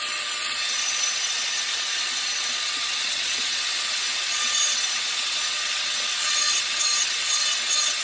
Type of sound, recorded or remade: remade